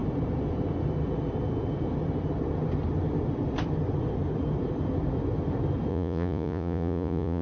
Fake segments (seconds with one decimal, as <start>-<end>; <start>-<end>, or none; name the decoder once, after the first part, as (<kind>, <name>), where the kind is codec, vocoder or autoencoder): 5.9-7.4 (vocoder, Vocos)